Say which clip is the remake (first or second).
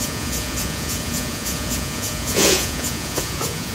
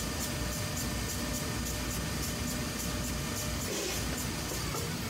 first